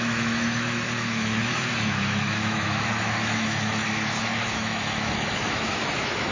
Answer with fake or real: fake